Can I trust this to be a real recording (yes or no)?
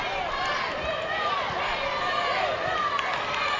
yes